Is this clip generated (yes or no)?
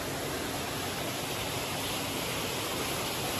no